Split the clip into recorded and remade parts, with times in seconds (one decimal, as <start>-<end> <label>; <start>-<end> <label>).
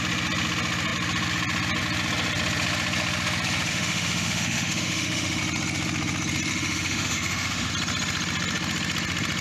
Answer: 0.0-3.7 recorded; 3.7-5.4 remade; 5.4-6.5 recorded; 6.5-7.7 remade; 7.7-9.4 recorded